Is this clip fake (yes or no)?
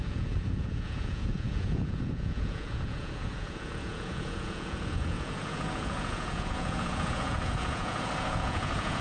yes